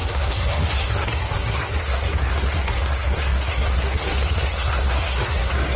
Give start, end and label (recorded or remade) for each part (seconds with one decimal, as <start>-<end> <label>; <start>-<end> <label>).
0.0-5.8 remade

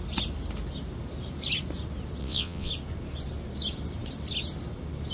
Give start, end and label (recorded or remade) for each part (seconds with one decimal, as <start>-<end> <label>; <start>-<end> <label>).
0.0-2.2 recorded; 2.2-2.7 remade; 2.7-5.1 recorded

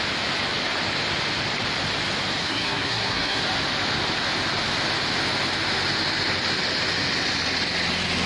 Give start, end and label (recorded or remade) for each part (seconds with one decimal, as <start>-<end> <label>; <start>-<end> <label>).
0.0-2.4 recorded; 2.4-3.4 remade; 3.4-8.3 recorded

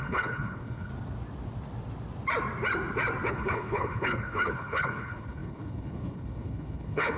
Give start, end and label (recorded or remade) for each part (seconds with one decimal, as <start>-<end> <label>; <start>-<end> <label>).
0.0-0.9 remade; 0.9-3.3 recorded; 3.3-7.2 remade